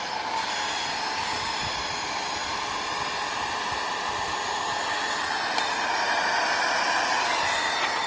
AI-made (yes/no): no